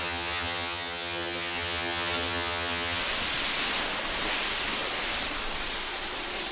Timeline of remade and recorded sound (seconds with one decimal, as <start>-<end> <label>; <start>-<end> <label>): 0.0-3.0 remade; 3.0-6.5 recorded